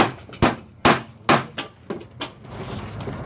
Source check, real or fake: real